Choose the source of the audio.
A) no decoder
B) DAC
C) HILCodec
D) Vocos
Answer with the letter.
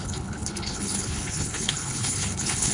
C